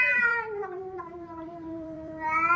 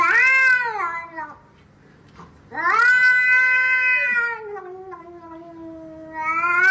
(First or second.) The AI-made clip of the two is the first